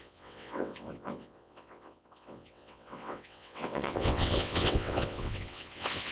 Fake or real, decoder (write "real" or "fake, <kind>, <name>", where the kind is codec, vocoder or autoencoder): fake, vocoder, WaveNeXt